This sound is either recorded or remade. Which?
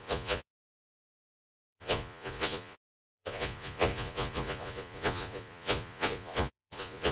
remade